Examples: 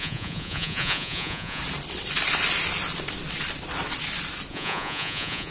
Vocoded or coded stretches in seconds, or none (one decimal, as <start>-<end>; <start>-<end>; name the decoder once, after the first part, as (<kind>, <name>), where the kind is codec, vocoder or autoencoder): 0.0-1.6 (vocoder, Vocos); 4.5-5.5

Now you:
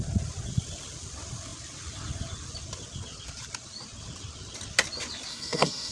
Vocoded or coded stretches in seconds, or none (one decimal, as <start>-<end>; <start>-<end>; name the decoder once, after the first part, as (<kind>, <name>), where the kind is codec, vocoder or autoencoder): 5.3-5.9 (codec, SNAC)

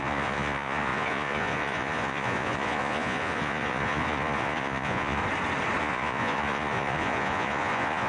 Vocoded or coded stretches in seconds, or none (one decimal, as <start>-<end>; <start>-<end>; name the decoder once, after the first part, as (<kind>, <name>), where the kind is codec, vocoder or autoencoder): 0.0-5.2 (vocoder, Vocos); 5.8-8.1